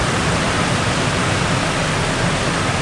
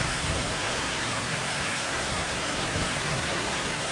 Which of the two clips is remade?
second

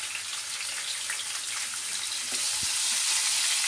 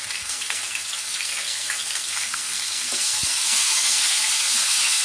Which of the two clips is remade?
second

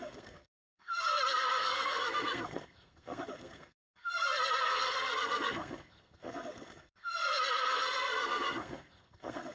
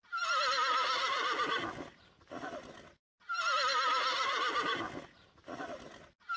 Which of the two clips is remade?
first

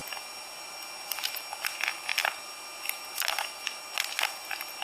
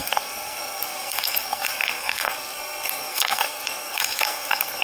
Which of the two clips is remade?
second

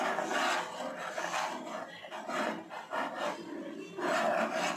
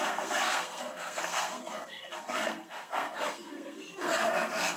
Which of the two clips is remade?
second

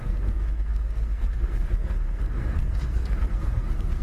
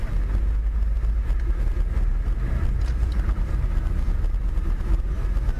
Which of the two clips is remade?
first